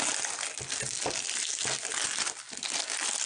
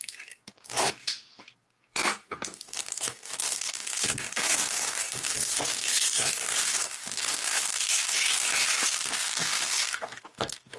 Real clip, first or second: first